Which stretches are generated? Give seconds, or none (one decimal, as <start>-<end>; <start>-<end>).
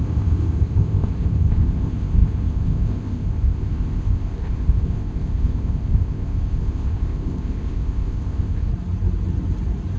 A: 0.0-8.7